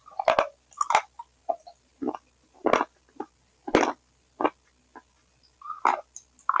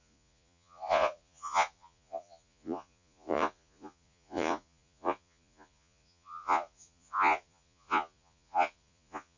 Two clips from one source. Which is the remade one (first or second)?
second